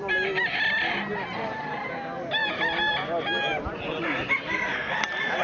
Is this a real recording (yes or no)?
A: yes